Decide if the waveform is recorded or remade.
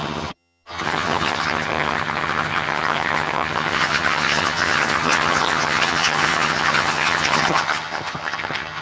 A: remade